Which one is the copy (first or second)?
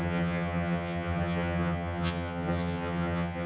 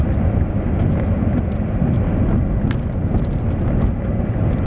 first